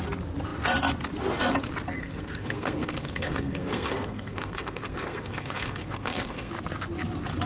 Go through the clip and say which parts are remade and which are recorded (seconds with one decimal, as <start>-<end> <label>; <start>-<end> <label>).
0.0-2.0 recorded; 2.0-6.5 remade; 6.5-7.5 recorded